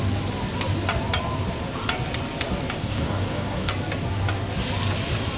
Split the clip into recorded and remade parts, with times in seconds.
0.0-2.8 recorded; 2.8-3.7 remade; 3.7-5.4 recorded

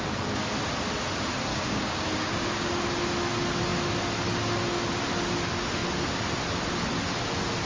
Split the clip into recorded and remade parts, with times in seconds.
0.0-1.5 recorded; 1.5-2.7 remade; 2.7-7.7 recorded

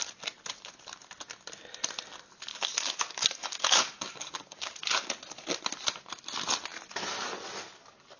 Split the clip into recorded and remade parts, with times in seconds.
0.0-2.5 recorded; 2.5-5.1 remade; 5.1-8.2 recorded

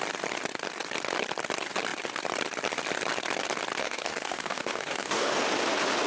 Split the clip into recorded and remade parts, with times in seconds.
0.0-3.8 recorded; 3.8-5.4 remade; 5.4-6.1 recorded

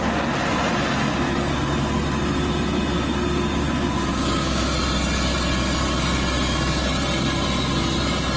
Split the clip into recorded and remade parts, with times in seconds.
0.0-4.1 recorded; 4.1-4.7 remade; 4.7-8.4 recorded

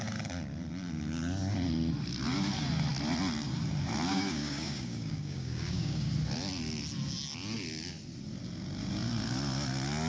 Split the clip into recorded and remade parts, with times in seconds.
0.0-4.1 recorded; 4.1-6.1 remade; 6.1-10.1 recorded